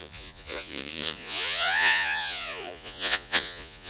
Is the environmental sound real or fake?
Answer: fake